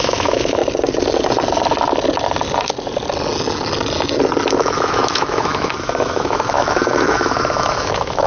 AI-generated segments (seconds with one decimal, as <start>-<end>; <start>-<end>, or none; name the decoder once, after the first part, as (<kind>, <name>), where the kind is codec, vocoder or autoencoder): 0.0-0.6 (autoencoder, DAC-VAE); 4.5-8.3